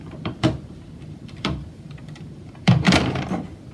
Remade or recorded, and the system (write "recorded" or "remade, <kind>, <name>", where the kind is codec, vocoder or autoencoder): remade, vocoder, BigVGAN v2